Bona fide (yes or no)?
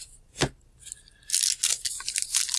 yes